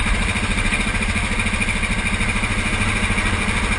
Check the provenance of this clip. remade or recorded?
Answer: recorded